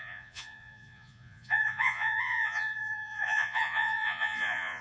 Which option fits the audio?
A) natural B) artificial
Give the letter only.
B